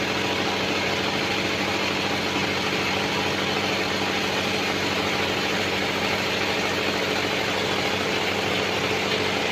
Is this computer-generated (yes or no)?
no